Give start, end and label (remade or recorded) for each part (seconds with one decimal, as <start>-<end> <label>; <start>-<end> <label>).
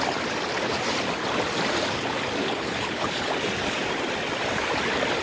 0.0-2.4 recorded; 2.4-3.3 remade; 3.3-5.2 recorded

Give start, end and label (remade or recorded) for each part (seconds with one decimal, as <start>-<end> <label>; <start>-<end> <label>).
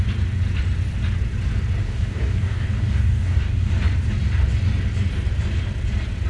0.0-1.8 recorded; 1.8-3.7 remade; 3.7-6.3 recorded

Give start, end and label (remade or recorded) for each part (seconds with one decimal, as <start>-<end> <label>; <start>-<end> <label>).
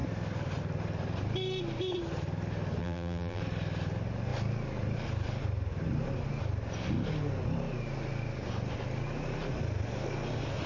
0.0-2.8 recorded; 2.8-3.4 remade; 3.4-10.7 recorded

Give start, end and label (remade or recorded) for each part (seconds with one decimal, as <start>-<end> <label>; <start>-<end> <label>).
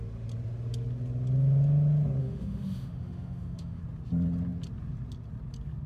0.0-2.2 recorded; 2.2-3.8 remade; 3.8-5.9 recorded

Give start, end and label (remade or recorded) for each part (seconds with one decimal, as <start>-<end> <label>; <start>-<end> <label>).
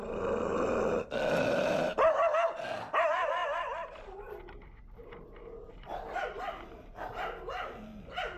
0.0-3.4 recorded; 3.4-6.4 remade; 6.4-8.4 recorded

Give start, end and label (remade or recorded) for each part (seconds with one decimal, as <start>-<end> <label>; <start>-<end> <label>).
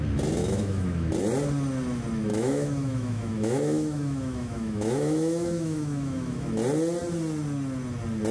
0.0-0.4 recorded; 0.4-1.1 remade; 1.1-2.3 recorded; 2.3-6.5 remade; 6.5-8.3 recorded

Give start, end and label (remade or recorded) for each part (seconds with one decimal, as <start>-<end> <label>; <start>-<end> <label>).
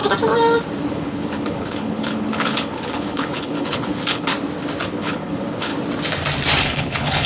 0.0-0.9 recorded; 0.9-4.3 remade; 4.3-4.9 recorded; 4.9-5.7 remade; 5.7-6.6 recorded; 6.6-7.3 remade